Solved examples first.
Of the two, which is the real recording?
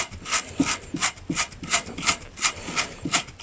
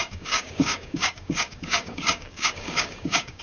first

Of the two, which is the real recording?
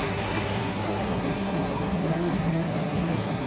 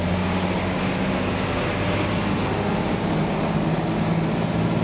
second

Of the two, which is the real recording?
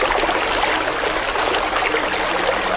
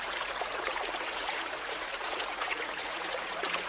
first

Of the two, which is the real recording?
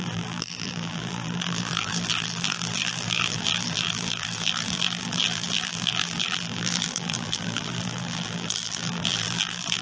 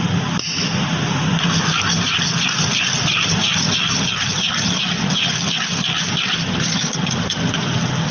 second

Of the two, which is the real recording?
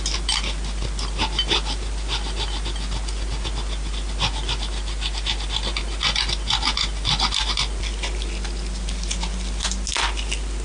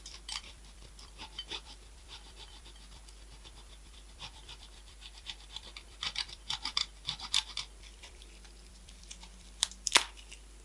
first